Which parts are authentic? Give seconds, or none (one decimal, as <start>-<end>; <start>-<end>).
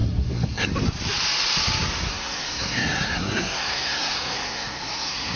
0.7-2.1